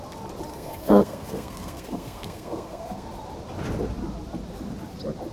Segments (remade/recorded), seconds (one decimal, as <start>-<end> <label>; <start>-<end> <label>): 0.0-0.5 recorded; 0.5-3.1 remade; 3.1-5.3 recorded